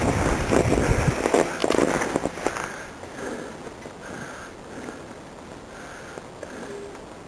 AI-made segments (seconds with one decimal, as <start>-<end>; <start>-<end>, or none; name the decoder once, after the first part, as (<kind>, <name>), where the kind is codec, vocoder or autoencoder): none